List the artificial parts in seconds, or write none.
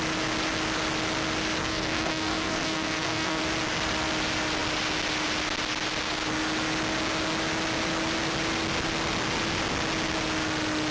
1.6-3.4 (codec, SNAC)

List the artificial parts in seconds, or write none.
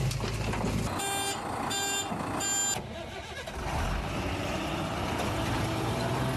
none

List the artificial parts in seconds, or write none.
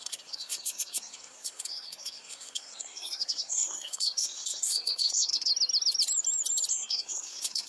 0.0-5.5 (codec, SNAC); 6.7-7.7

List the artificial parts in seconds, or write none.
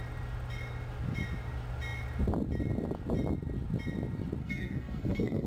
4.4-5.5 (codec, SNAC)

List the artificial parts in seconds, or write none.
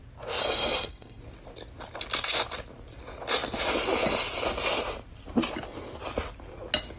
0.4-1.2 (codec, SNAC)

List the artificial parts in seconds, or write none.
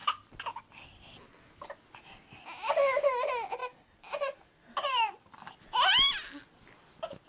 none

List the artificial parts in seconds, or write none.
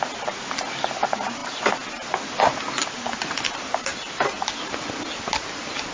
none